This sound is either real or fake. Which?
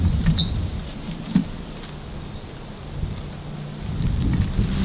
real